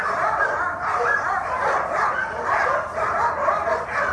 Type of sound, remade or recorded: remade